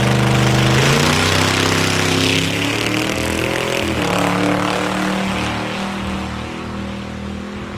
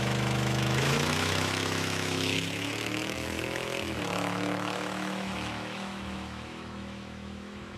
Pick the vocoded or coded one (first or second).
second